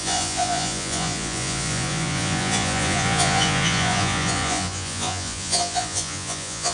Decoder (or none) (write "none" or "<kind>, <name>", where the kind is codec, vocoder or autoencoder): vocoder, Vocos